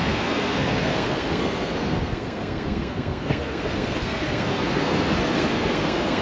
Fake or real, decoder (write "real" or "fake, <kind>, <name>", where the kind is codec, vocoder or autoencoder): fake, codec, SNAC